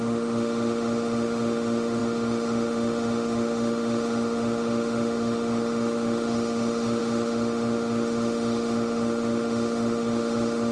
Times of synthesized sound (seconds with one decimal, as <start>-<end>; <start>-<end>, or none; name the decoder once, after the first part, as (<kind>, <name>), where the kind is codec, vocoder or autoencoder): 0.0-10.7 (autoencoder, DAC-VAE)

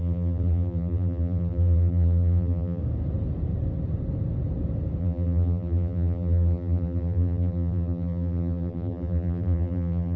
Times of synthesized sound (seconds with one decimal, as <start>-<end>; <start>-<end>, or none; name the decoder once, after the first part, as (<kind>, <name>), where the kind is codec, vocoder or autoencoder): 0.0-2.8 (vocoder, BigVGAN v2); 5.0-10.2

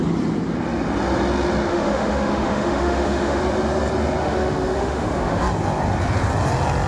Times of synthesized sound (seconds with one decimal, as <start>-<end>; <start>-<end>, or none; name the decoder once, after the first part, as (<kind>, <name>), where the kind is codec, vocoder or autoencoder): 1.7-3.4 (autoencoder, DAC-VAE); 4.2-5.4

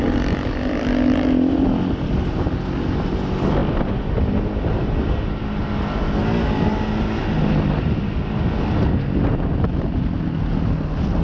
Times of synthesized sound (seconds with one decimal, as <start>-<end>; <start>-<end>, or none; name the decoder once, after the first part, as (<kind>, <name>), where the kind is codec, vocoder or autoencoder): none

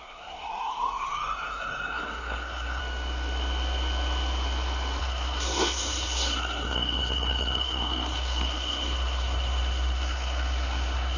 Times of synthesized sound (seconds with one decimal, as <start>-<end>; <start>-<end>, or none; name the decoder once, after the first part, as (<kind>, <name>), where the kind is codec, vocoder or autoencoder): 0.0-2.8 (codec, SNAC); 5.0-11.2

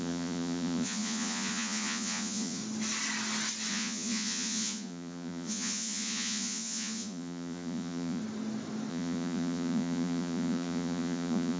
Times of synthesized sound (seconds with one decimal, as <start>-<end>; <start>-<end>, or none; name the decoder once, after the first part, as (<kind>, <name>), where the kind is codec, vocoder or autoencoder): 0.0-2.6 (vocoder, Vocos); 3.7-8.2; 8.9-11.6

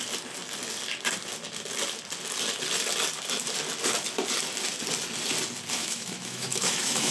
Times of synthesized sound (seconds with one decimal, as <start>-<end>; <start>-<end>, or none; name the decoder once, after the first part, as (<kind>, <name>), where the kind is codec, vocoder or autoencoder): 5.8-7.1 (autoencoder, DAC-VAE)